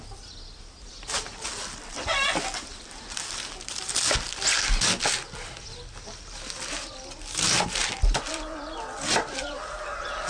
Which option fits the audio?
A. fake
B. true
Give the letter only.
B